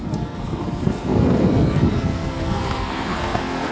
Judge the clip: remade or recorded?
remade